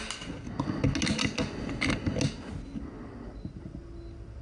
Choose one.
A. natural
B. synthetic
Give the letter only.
A